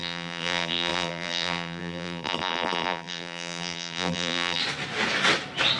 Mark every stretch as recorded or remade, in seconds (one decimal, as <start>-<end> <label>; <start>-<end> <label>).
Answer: 0.0-4.6 remade; 4.6-5.8 recorded